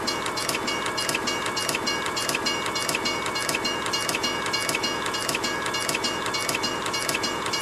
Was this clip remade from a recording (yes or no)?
yes